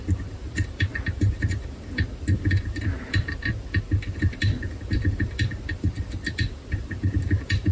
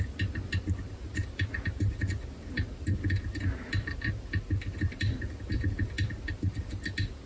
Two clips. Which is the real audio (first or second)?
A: second